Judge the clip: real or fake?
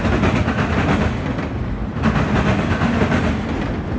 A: real